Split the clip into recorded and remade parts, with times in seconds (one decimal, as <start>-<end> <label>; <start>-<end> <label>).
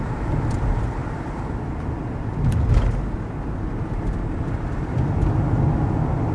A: 0.0-6.3 recorded